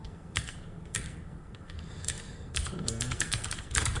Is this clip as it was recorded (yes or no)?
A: no